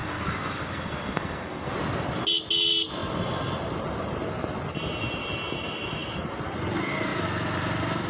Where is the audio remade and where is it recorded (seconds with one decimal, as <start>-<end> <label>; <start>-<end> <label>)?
0.0-1.7 remade; 1.7-8.1 recorded